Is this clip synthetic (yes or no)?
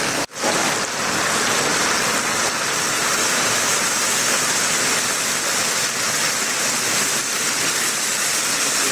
no